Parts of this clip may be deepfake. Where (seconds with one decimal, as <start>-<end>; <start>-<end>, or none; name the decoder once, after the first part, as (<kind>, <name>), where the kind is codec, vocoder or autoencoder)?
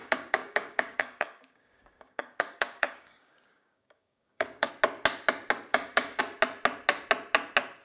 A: 0.0-4.7 (codec, DAC); 5.7-6.2